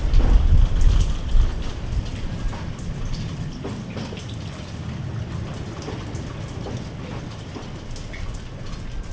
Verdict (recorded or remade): recorded